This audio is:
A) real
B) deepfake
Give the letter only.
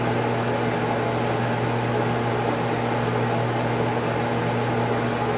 A